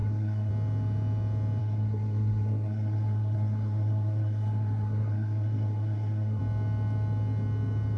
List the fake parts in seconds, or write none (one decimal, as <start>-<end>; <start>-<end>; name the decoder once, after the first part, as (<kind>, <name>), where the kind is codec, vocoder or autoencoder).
0.0-0.5 (codec, SNAC); 1.6-6.4